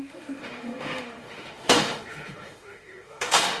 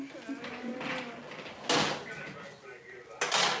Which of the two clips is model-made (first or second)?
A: first